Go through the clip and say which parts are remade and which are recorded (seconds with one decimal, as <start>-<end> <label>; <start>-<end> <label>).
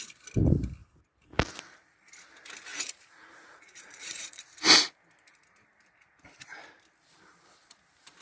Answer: 0.0-2.7 recorded; 2.7-4.4 remade; 4.4-8.2 recorded